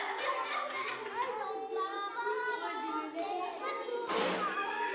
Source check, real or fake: real